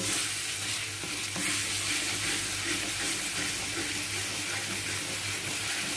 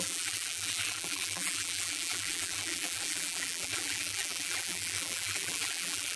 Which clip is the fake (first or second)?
second